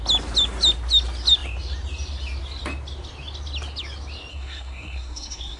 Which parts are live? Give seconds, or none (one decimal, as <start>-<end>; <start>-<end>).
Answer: 0.0-4.3